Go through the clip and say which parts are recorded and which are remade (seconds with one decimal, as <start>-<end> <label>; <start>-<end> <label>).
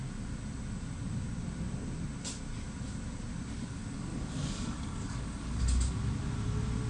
0.0-4.1 recorded; 4.1-5.6 remade; 5.6-6.9 recorded